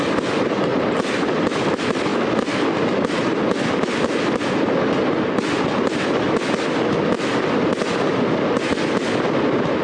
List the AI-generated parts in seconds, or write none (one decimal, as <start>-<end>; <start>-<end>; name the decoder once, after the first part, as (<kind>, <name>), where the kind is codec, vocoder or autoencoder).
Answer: 0.7-1.6 (vocoder, BigVGAN v2)